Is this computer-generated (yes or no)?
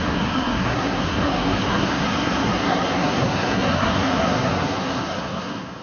yes